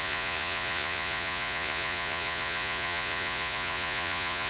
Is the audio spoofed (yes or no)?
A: yes